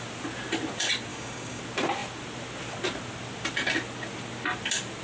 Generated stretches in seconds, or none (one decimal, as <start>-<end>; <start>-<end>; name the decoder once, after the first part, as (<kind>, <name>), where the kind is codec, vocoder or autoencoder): 1.1-1.6 (codec, DAC)

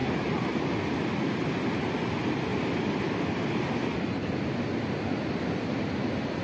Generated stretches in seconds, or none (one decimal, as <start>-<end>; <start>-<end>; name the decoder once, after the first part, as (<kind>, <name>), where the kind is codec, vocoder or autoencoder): none

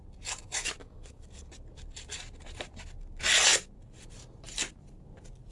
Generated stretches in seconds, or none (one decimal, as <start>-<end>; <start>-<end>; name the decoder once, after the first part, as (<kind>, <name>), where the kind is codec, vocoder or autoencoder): 0.8-1.5 (codec, DAC)

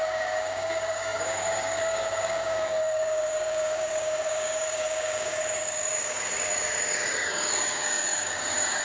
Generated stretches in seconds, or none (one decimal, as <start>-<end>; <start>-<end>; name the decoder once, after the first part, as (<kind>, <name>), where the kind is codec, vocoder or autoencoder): 0.0-8.8 (codec, DAC)

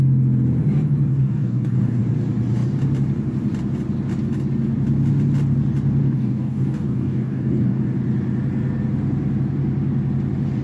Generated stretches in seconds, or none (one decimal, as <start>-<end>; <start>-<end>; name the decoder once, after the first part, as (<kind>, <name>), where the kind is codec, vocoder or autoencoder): 1.1-2.0 (codec, DAC); 6.0-7.8